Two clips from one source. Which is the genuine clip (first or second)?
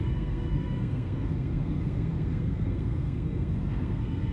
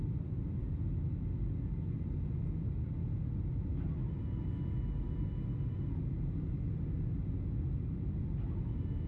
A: second